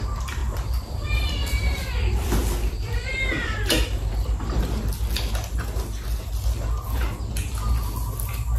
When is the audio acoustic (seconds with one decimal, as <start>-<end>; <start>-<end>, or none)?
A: 0.0-0.4; 4.6-8.6

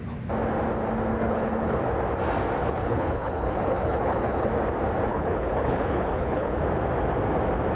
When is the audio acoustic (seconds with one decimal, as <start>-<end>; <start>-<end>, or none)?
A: 0.0-1.1; 1.8-2.6; 4.5-5.1; 6.6-7.8

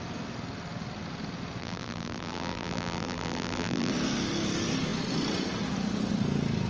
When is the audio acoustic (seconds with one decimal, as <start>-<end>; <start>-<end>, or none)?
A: 0.0-1.6; 3.9-6.7

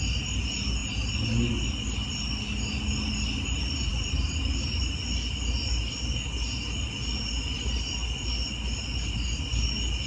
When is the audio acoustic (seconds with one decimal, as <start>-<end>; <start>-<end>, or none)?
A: 0.0-10.1

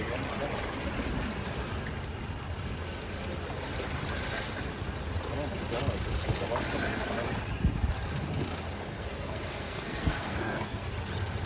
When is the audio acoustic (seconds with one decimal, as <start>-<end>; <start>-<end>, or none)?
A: 0.0-8.9; 10.9-11.5